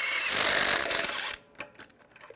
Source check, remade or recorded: recorded